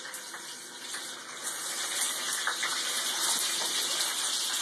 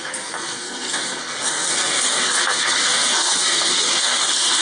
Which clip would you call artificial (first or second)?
second